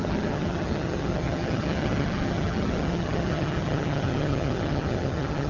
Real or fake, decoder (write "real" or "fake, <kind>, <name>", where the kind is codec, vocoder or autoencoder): fake, vocoder, HiFi-GAN